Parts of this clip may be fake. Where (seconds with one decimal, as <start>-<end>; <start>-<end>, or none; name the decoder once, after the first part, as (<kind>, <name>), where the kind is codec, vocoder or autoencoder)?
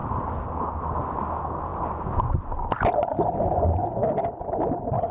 none